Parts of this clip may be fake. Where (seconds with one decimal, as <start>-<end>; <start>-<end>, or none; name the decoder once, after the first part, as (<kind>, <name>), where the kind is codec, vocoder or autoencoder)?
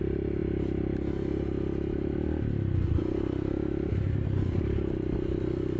none